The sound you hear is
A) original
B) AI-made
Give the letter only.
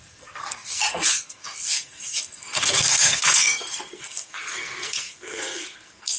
B